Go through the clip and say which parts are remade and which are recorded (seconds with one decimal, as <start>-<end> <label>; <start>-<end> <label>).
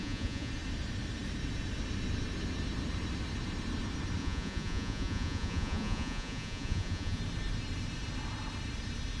0.0-0.5 remade; 0.5-4.2 recorded; 4.2-7.2 remade; 7.2-9.2 recorded